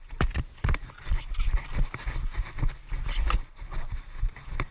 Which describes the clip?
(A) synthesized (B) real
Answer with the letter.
B